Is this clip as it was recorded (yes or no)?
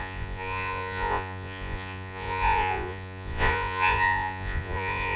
no